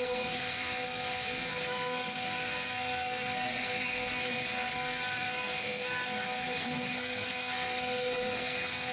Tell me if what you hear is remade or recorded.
remade